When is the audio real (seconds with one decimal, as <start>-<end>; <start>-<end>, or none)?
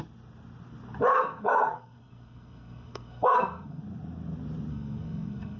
0.0-1.1; 3.8-4.7